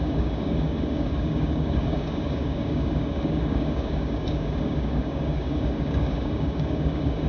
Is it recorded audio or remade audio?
remade